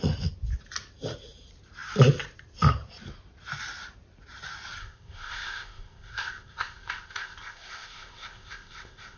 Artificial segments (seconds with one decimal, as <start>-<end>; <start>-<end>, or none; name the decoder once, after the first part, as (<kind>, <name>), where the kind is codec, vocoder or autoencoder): 4.8-9.2 (codec, ZipCodec)